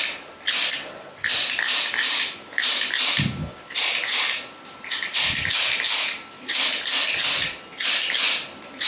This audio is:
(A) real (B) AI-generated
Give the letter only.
A